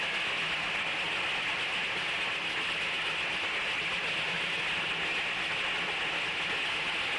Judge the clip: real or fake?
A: real